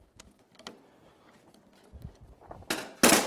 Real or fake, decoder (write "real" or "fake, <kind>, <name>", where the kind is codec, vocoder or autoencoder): real